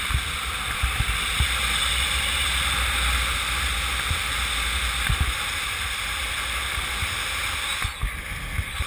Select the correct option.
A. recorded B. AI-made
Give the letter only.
A